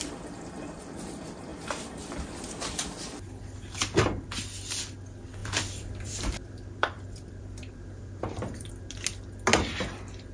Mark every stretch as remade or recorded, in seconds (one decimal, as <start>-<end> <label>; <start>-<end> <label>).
0.0-1.5 recorded; 1.5-3.2 remade; 3.2-5.4 recorded; 5.4-8.7 remade; 8.7-10.3 recorded